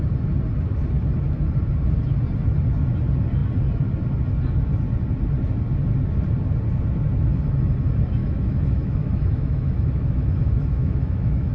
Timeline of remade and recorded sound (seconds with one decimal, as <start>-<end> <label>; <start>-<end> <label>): 0.0-8.2 recorded; 8.2-11.5 remade